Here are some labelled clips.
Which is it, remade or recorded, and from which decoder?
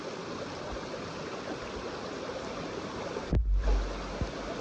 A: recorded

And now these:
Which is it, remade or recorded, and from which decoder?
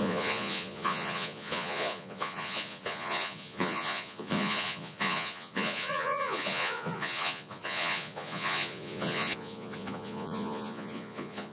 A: remade, vocoder, Vocos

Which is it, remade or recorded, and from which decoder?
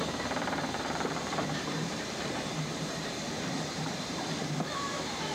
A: remade, vocoder, BigVGAN v2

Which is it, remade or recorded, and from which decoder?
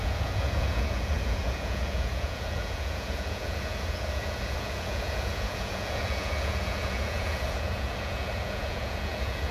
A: remade, vocoder, Vocos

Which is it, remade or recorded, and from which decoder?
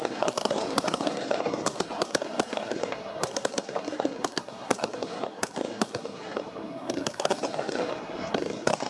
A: remade, codec, SNAC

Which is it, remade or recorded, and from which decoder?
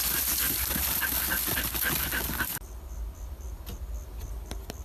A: recorded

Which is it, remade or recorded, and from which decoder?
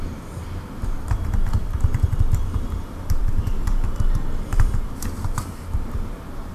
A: remade, vocoder, BigVGAN v2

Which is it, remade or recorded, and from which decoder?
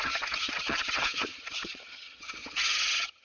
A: remade, vocoder, HiFi-GAN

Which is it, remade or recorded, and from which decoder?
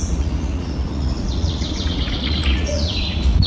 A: remade, vocoder, Vocos